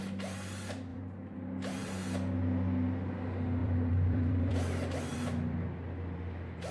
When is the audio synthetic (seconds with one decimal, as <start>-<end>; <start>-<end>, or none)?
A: 0.9-1.9; 3.6-4.5; 5.1-5.6